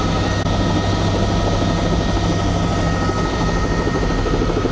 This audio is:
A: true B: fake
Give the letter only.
A